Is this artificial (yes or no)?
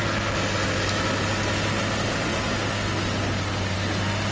no